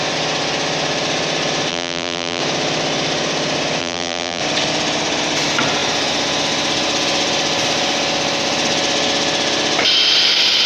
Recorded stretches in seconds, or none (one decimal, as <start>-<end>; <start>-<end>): 0.0-1.7; 2.4-3.8; 4.4-10.7